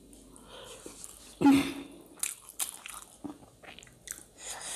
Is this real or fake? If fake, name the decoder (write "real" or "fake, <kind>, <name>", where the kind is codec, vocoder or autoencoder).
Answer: real